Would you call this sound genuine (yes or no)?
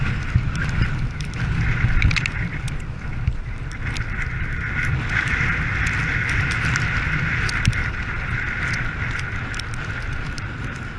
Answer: yes